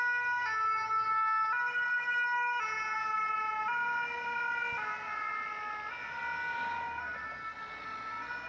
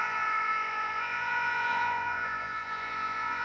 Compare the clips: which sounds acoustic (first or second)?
first